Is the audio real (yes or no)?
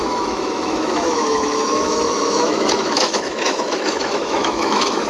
no